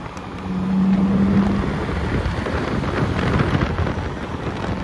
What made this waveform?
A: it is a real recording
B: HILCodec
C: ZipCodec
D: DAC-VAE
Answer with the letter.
A